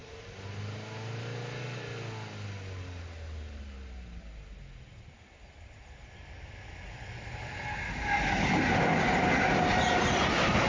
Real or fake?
real